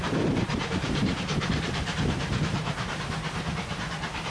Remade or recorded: remade